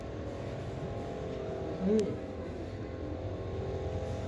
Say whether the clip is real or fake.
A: real